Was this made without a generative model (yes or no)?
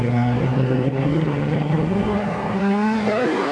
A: no